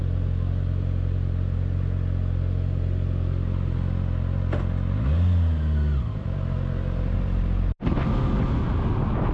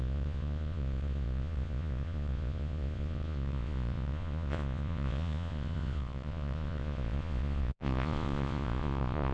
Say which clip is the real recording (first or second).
first